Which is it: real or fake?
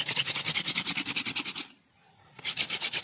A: real